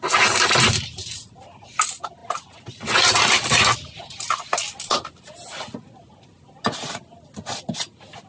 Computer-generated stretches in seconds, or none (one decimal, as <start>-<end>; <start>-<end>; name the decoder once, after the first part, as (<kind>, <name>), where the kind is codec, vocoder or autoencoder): none